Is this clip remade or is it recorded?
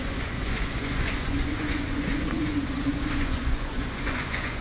remade